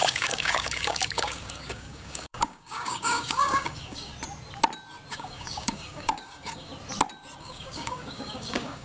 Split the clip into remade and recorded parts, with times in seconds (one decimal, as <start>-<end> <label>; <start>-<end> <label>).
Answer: 0.0-4.1 remade; 4.1-5.1 recorded; 5.1-6.7 remade; 6.7-7.4 recorded; 7.4-8.8 remade